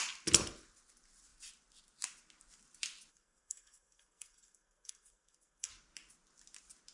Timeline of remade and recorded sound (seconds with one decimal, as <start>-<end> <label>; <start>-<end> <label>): 0.0-3.1 recorded; 3.1-5.7 remade; 5.7-6.9 recorded